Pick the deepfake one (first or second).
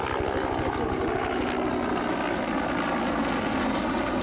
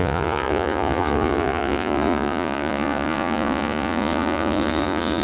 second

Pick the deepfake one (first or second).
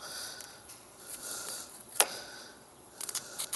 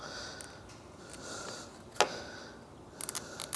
first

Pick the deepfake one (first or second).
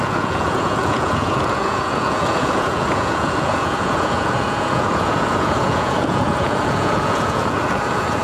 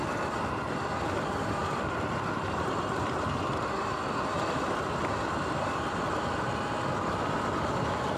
first